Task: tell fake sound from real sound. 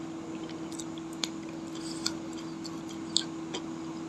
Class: real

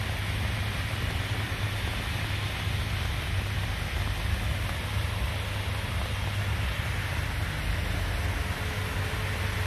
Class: real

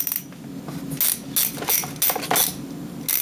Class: real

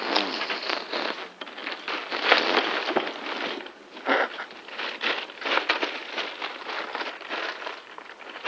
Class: real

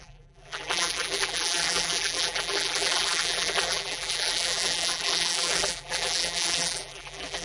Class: fake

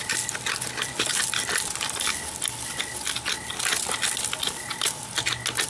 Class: real